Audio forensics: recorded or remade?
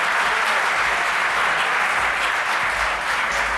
recorded